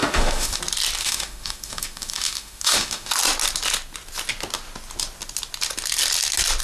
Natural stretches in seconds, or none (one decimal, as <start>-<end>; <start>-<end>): 0.6-1.0; 3.1-6.6